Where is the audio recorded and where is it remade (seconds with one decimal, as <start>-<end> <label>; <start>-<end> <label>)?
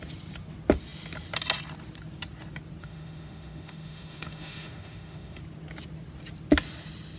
0.0-2.8 recorded; 2.8-5.4 remade; 5.4-7.2 recorded